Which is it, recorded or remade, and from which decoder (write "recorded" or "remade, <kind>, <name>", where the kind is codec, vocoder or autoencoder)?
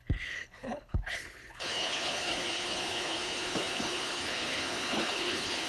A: remade, codec, HILCodec